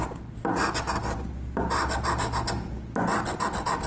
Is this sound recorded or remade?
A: recorded